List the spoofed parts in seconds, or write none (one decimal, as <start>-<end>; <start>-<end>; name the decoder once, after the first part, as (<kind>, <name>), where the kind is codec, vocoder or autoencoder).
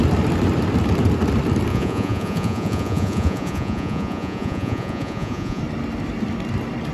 1.7-5.6 (vocoder, Vocos)